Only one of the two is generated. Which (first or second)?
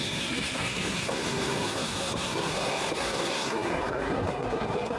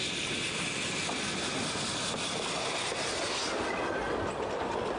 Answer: first